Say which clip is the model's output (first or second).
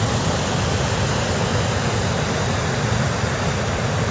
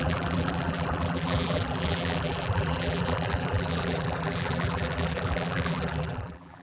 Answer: second